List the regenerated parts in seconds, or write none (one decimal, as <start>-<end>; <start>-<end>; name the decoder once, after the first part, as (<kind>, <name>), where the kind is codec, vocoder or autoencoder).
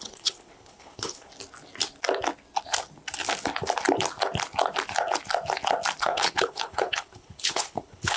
0.0-1.3 (codec, HILCodec); 6.0-8.2